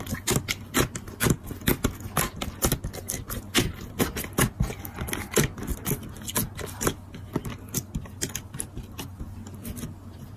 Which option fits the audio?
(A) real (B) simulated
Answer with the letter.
A